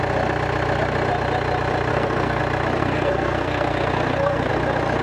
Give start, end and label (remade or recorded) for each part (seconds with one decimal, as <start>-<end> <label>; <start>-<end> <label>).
0.0-1.9 recorded; 1.9-2.4 remade; 2.4-2.8 recorded; 2.8-4.5 remade; 4.5-5.0 recorded